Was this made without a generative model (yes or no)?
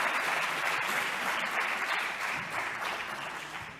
no